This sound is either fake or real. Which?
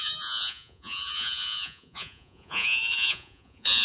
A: fake